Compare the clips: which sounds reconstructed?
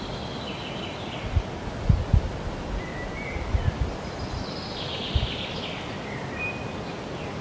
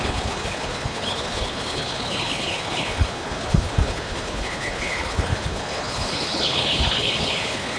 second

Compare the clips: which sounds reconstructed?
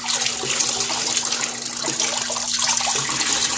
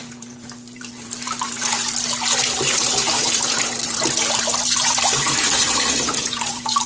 second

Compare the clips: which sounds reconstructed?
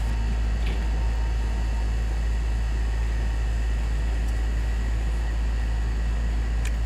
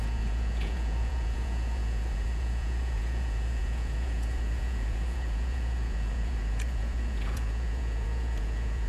second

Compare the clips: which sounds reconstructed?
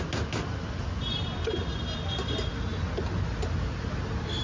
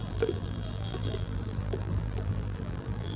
second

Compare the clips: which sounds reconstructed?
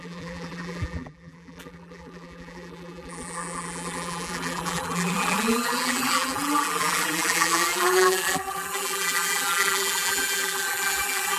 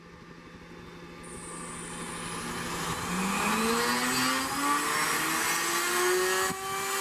first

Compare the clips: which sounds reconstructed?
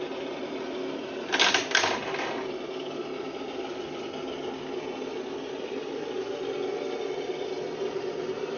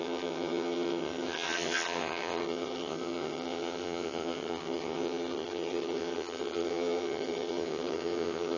second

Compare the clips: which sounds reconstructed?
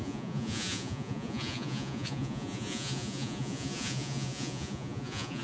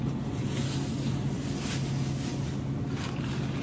first